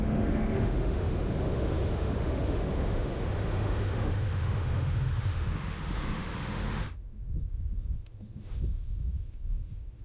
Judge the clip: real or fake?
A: fake